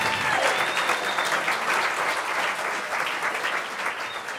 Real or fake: real